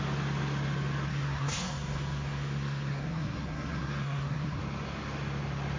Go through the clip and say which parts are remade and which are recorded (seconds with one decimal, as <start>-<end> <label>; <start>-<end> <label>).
0.0-1.1 recorded; 1.1-4.6 remade; 4.6-5.8 recorded